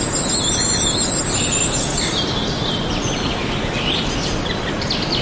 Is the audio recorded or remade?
recorded